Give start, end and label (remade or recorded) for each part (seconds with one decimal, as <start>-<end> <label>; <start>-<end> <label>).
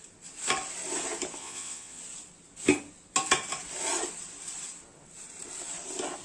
0.0-1.4 recorded; 1.4-2.0 remade; 2.0-6.2 recorded